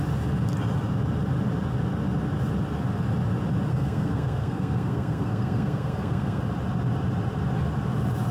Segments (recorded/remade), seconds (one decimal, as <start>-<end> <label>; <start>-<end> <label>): 0.0-3.7 recorded; 3.7-6.4 remade; 6.4-8.3 recorded